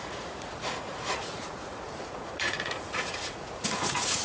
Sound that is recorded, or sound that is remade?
remade